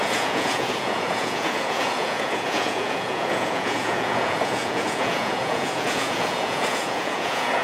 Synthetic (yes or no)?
yes